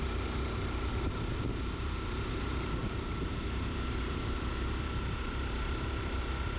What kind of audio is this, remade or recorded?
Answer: remade